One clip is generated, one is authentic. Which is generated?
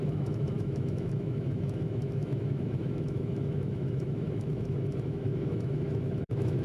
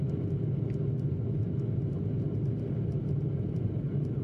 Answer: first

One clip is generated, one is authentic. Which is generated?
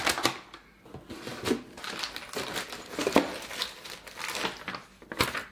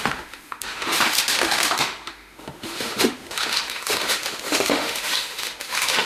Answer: second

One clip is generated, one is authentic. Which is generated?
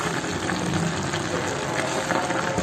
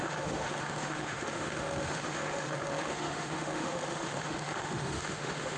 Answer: second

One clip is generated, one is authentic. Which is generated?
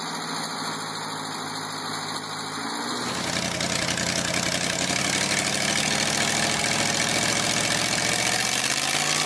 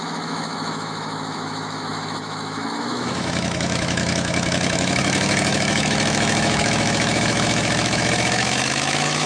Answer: second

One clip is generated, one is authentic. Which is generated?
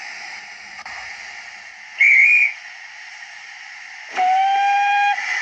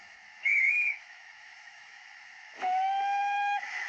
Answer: second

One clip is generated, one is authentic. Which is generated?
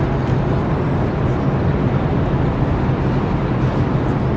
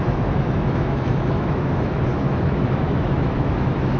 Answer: second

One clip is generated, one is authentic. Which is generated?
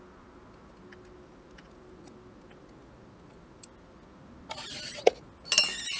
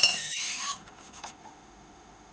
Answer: second